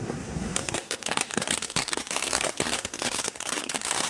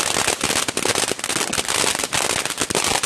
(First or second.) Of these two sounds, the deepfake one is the first